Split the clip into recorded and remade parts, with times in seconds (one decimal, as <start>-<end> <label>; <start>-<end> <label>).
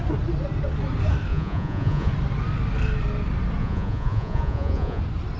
0.0-1.3 recorded; 1.3-2.1 remade; 2.1-3.6 recorded; 3.6-5.0 remade; 5.0-5.4 recorded